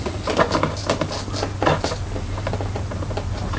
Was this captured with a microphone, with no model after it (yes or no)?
no